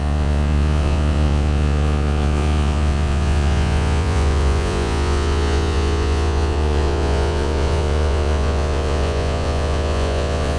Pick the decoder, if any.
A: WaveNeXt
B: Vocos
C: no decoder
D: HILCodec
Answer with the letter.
B